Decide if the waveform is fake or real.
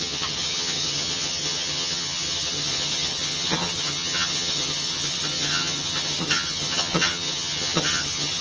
fake